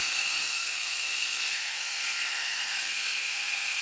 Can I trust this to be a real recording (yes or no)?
no